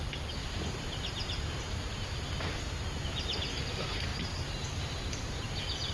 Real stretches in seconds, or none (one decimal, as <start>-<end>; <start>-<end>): 0.0-5.9